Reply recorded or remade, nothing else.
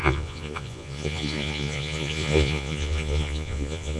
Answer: remade